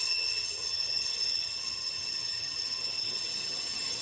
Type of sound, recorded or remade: remade